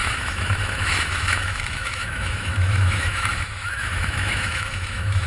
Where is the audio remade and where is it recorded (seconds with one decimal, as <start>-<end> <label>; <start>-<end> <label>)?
0.0-5.3 remade